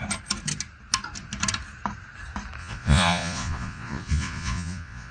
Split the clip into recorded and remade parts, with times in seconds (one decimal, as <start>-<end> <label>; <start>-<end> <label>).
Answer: 0.0-2.6 recorded; 2.6-5.1 remade